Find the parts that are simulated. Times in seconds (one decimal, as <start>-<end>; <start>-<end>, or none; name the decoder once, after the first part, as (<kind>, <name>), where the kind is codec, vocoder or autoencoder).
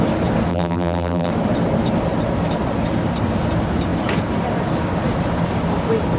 0.5-1.3 (vocoder, BigVGAN v2)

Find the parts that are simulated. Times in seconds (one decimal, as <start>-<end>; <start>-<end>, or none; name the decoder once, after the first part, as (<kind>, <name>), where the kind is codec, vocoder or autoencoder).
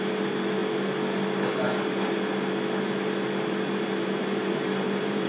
4.4-5.3 (vocoder, BigVGAN v2)